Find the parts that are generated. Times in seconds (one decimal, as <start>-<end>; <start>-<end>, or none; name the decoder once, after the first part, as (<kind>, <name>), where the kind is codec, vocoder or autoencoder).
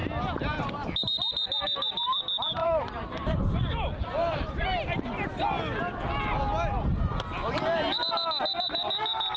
2.6-4.6 (vocoder, BigVGAN v2)